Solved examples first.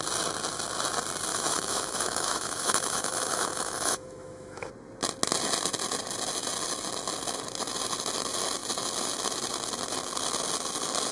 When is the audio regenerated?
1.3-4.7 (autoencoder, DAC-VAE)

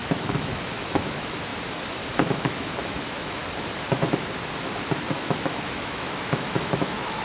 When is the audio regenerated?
0.0-1.5 (autoencoder, DAC-VAE); 2.1-3.4; 4.6-7.2

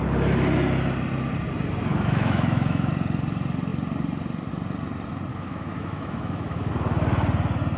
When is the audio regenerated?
1.9-2.9 (autoencoder, DAC-VAE); 5.3-6.7

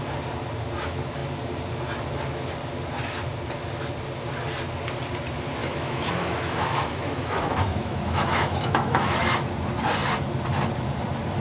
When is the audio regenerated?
5.6-9.5 (autoencoder, DAC-VAE)

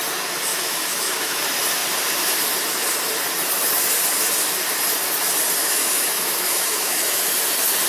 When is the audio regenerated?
0.5-1.4 (autoencoder, DAC-VAE); 5.6-7.3

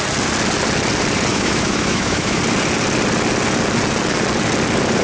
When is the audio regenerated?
1.3-2.4 (autoencoder, DAC-VAE)